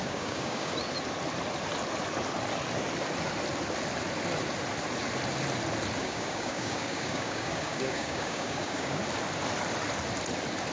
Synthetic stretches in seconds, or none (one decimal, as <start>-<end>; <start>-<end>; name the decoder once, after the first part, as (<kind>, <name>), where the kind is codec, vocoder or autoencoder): 0.0-0.7 (codec, DAC); 6.0-9.0